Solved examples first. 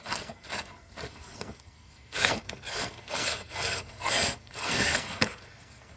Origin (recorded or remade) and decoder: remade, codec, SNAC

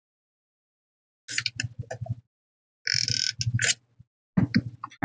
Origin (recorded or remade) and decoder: recorded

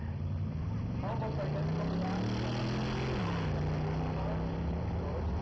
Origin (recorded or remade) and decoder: recorded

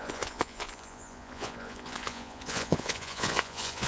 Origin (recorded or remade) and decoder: remade, vocoder, Vocos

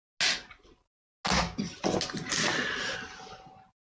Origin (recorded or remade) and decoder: recorded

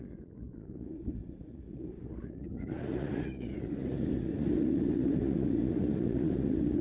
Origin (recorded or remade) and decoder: remade, vocoder, Vocos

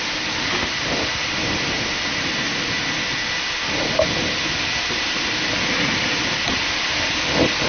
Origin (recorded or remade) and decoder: recorded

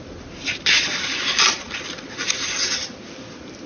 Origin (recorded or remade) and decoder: recorded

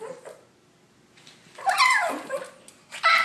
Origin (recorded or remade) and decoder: recorded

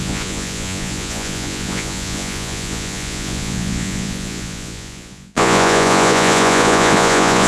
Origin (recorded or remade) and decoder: remade, vocoder, Vocos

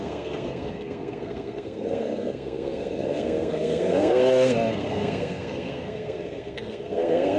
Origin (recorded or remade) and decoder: remade, codec, SNAC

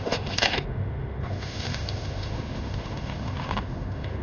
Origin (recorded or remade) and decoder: remade, autoencoder, DAC-VAE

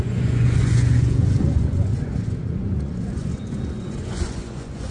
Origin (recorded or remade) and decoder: remade, vocoder, Vocos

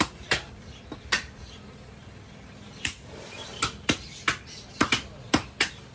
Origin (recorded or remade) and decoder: recorded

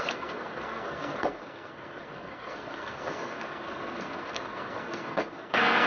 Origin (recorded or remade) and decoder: remade, codec, SNAC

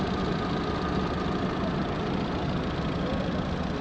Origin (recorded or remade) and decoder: recorded